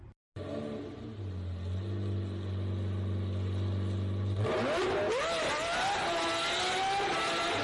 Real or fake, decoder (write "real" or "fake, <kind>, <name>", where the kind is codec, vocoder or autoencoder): real